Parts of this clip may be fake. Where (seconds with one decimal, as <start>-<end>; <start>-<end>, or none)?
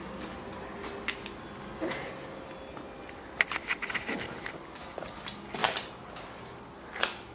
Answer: none